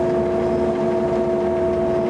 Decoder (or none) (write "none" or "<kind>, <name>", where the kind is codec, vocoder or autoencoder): none